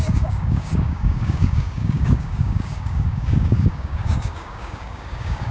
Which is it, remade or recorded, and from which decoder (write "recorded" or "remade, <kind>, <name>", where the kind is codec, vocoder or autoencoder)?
remade, codec, DAC